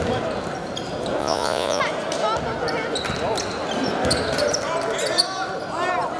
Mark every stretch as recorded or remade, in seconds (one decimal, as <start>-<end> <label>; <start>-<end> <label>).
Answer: 0.0-1.2 recorded; 1.2-1.8 remade; 1.8-6.2 recorded